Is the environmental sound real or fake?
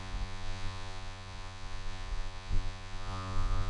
fake